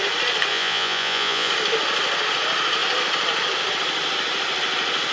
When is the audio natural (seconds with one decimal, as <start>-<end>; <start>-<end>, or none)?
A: 0.0-0.5; 1.5-5.1